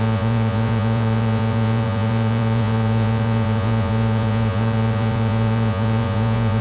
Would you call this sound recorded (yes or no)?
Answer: no